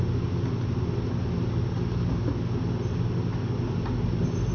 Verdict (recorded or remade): recorded